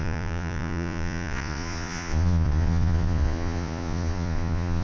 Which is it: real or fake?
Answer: fake